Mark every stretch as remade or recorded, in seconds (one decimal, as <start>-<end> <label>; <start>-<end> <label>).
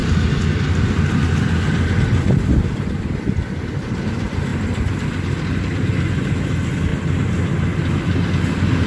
0.0-8.9 recorded